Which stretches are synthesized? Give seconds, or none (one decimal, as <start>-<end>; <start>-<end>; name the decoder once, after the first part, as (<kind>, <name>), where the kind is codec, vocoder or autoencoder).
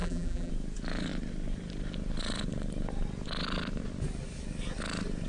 0.0-0.5 (vocoder, BigVGAN v2)